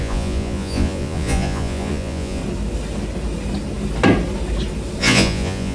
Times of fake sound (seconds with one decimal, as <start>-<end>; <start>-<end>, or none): 0.0-2.4; 5.0-5.7